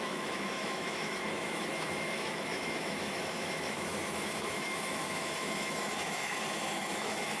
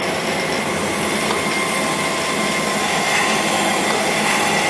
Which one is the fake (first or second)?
first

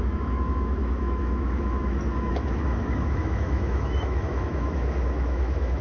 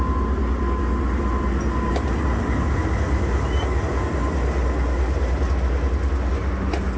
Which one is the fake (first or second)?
first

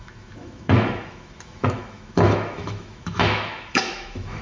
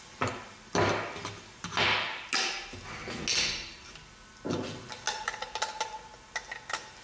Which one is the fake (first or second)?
first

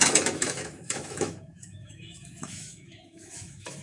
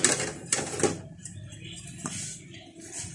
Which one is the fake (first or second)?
first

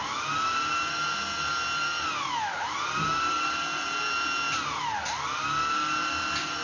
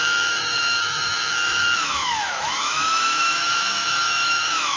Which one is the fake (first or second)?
second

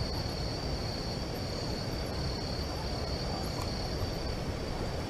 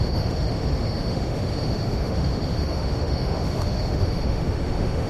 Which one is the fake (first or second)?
second